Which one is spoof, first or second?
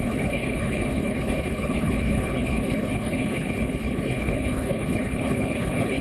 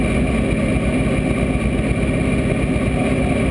first